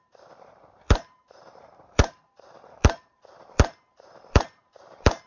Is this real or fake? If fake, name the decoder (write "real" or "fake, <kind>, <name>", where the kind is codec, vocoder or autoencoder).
fake, vocoder, BigVGAN v2